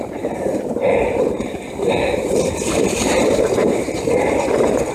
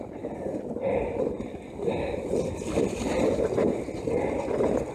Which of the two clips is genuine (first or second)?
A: second